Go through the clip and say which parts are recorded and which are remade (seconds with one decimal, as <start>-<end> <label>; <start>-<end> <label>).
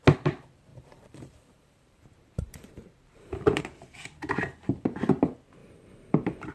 0.0-0.7 recorded; 0.7-3.6 remade; 3.6-5.6 recorded; 5.6-6.5 remade